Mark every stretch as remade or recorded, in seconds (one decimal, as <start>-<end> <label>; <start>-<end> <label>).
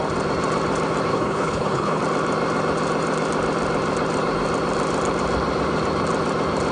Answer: 0.0-1.1 recorded; 1.1-2.0 remade; 2.0-6.7 recorded